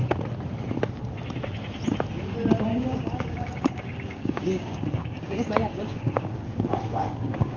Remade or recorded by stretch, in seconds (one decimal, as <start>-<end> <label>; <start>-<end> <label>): 0.0-2.7 recorded; 2.7-7.6 remade